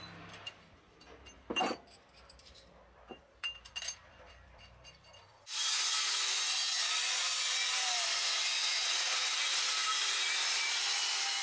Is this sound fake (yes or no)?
yes